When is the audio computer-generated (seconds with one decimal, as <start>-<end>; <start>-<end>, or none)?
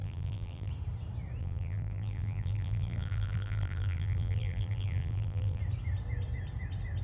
0.0-0.7; 1.4-5.6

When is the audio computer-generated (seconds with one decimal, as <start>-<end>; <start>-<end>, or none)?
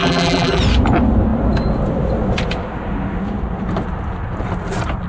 0.0-0.6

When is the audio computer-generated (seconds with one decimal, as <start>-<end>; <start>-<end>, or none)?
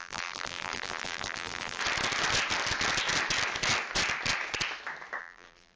0.0-1.8; 5.2-5.8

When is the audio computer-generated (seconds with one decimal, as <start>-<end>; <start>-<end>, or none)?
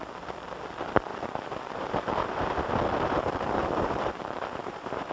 1.1-2.7; 3.6-5.1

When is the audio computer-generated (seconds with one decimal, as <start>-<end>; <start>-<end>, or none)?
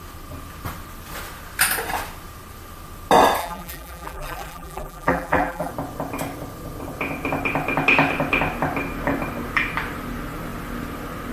3.4-5.7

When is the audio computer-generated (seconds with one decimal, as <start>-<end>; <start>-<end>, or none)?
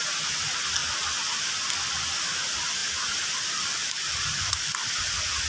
2.8-4.9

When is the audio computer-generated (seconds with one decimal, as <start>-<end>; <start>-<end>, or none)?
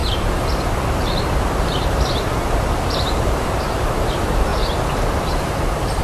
0.0-4.5; 5.2-6.0